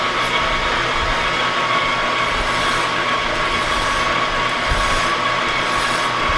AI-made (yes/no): no